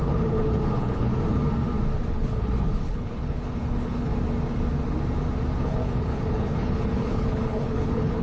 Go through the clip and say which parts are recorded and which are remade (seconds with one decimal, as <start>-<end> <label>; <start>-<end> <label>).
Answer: 0.0-1.1 remade; 1.1-2.1 recorded; 2.1-4.1 remade; 4.1-5.6 recorded; 5.6-8.2 remade